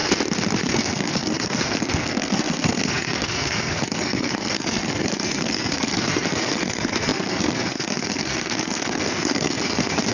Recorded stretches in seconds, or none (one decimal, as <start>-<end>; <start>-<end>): 0.0-0.7

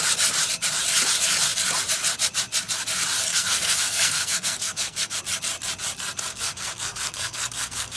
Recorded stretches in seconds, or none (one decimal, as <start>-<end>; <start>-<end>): 0.0-3.3; 5.2-6.3

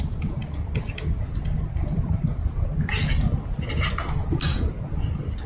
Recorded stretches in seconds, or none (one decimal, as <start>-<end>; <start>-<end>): 0.0-5.5